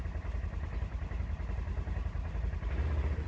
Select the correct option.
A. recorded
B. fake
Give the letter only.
A